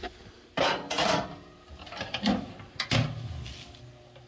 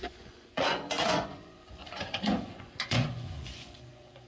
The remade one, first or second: second